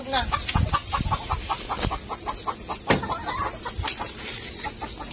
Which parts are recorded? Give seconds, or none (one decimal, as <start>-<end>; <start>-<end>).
0.0-5.1